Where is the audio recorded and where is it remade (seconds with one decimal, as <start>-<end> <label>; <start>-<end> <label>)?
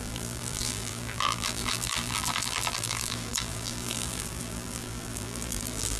0.0-6.0 remade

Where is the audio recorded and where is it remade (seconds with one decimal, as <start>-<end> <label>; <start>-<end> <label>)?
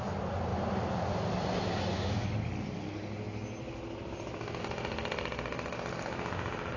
0.0-6.8 recorded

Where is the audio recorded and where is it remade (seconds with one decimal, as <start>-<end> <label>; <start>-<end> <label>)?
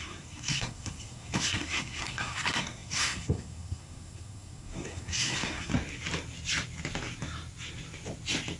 0.0-5.7 remade; 5.7-8.6 recorded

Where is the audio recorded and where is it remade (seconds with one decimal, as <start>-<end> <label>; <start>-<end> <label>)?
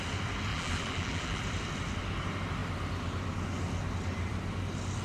0.0-0.5 recorded; 0.5-1.4 remade; 1.4-5.0 recorded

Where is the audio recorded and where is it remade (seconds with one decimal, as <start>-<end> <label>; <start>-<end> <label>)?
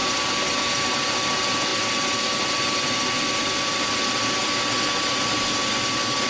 0.0-6.3 recorded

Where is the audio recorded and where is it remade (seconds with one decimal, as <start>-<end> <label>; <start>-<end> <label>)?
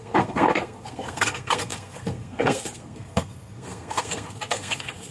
0.0-5.1 remade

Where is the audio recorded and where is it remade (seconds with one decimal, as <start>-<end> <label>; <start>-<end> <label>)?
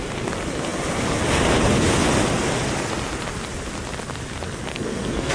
0.0-4.7 recorded; 4.7-5.3 remade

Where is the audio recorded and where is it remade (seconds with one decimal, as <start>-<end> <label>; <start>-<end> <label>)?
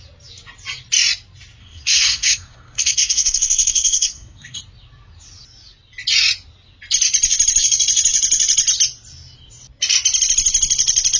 0.0-1.6 recorded; 1.6-4.6 remade; 4.6-11.2 recorded